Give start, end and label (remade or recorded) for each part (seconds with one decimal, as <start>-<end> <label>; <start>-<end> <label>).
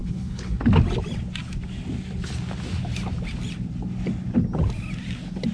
0.0-0.6 remade; 0.6-5.5 recorded